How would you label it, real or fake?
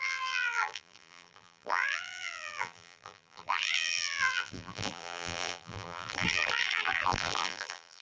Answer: fake